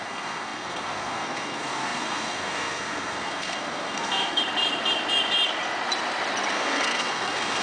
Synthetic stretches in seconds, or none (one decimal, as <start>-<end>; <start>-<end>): 0.0-4.4; 6.5-7.6